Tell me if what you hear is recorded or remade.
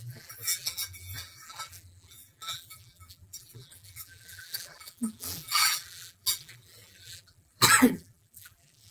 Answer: remade